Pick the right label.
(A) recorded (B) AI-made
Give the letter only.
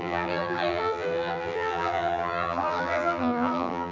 B